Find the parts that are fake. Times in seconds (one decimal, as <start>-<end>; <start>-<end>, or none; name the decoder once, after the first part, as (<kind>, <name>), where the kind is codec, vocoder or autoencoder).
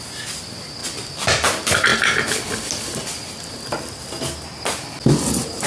none